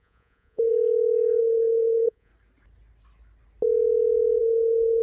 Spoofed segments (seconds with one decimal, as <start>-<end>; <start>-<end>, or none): 0.0-0.7; 1.4-2.3; 4.4-5.0